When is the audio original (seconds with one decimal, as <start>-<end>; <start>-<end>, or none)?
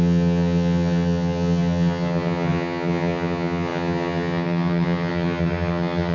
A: none